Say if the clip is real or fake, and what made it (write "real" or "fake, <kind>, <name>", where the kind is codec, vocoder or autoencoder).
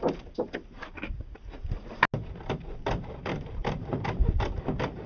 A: real